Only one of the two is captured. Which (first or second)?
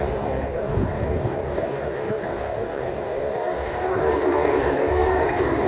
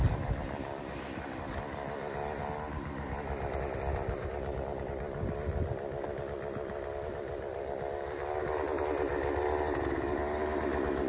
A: second